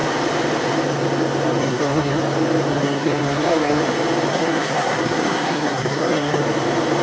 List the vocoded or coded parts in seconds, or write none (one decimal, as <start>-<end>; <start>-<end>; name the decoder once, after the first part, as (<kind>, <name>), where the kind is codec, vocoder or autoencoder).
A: 1.6-2.2 (codec, SNAC); 2.7-3.8; 4.3-6.4